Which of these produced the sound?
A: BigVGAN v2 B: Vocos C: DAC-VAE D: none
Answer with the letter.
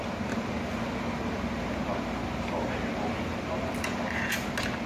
D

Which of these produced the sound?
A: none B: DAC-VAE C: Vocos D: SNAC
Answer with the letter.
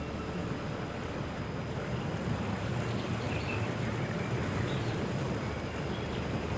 A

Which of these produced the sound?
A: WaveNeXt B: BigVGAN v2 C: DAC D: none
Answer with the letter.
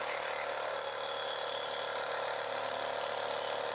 D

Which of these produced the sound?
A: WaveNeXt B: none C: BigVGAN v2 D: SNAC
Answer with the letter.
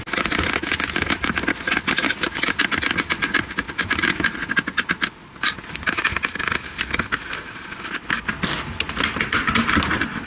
B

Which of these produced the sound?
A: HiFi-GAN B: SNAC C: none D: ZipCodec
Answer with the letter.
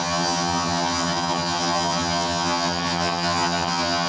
A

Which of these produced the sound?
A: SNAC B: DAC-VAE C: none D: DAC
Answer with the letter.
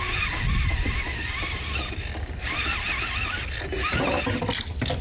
C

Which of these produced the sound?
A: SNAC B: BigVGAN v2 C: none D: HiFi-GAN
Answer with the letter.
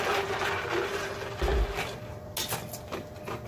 C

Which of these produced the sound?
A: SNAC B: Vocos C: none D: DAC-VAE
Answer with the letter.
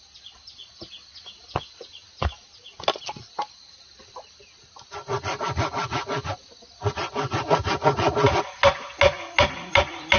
C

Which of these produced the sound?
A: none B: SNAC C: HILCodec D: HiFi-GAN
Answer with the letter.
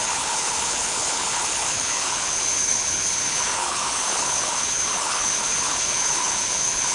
C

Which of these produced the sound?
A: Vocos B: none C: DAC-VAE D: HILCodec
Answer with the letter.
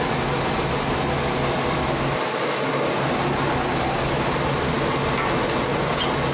B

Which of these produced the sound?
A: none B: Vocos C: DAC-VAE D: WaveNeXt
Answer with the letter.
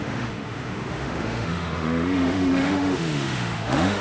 C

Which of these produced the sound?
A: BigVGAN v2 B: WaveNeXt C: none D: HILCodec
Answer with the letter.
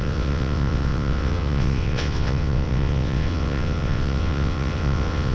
B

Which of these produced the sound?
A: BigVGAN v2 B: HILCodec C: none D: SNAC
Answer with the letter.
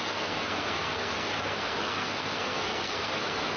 D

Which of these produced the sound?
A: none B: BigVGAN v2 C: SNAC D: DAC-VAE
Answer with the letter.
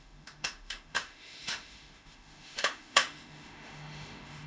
D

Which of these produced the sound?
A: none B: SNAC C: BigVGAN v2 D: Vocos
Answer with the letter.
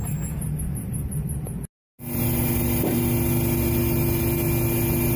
A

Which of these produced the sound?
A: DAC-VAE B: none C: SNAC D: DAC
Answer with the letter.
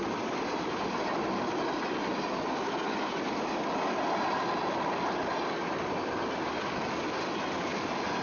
B